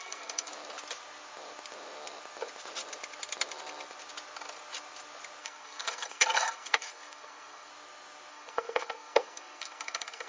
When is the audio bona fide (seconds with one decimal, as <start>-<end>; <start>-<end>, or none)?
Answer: 0.5-5.4; 7.7-8.3